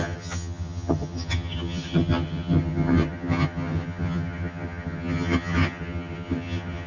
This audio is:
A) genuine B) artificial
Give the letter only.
B